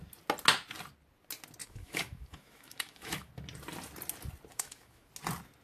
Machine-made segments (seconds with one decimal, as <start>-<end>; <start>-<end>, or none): 1.6-3.3; 4.5-5.1